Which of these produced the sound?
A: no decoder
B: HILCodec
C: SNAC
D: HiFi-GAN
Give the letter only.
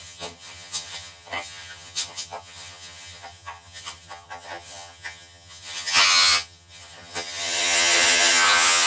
D